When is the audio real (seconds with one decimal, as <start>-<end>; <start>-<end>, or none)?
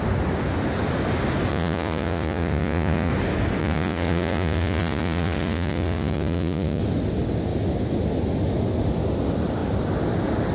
0.0-1.5; 3.1-3.6; 6.8-10.5